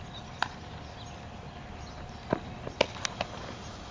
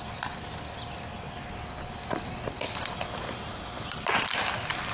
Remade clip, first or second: first